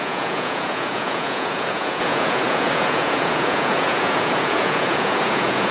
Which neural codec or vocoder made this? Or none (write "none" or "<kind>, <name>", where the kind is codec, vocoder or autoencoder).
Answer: vocoder, Vocos